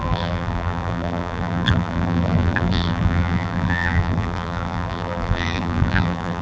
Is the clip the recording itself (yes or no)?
no